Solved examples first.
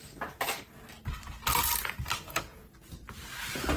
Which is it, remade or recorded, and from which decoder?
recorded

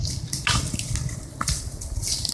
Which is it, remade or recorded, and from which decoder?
recorded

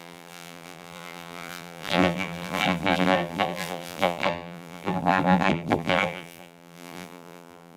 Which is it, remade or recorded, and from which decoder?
remade, vocoder, BigVGAN v2